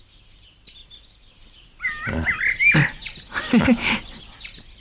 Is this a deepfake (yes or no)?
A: no